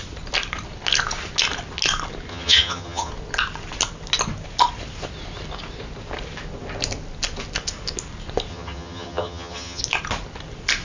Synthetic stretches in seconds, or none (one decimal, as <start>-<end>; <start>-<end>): 2.3-3.1; 8.5-9.8